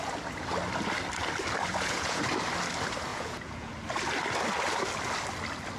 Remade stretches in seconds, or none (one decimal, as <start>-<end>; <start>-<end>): 1.7-2.2; 3.1-3.7